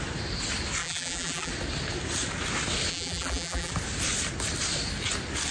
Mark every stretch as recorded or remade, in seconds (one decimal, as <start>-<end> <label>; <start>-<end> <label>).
0.0-0.8 recorded; 0.8-1.5 remade; 1.5-2.9 recorded; 2.9-3.7 remade; 3.7-5.5 recorded